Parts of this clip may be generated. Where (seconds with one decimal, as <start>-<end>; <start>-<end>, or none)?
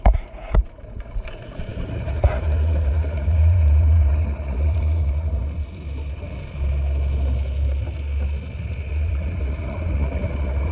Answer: 0.0-5.4; 8.9-10.7